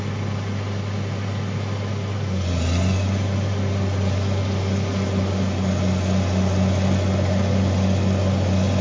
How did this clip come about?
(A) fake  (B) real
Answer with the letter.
B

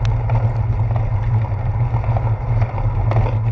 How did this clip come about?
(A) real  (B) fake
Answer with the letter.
A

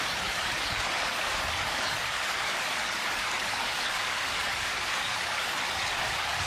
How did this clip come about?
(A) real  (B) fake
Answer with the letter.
B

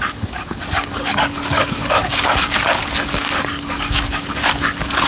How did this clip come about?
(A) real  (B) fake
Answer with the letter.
B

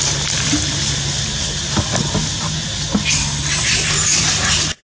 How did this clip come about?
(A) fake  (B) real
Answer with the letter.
B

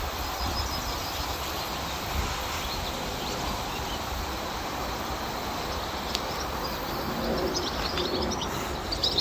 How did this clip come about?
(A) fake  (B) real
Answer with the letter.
A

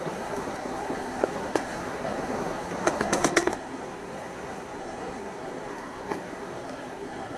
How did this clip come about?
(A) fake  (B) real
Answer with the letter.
A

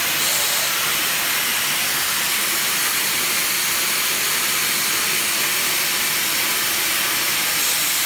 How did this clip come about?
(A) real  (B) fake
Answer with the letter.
A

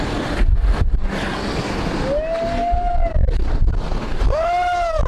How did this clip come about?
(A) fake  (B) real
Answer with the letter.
B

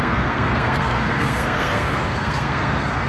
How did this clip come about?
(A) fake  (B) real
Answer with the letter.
A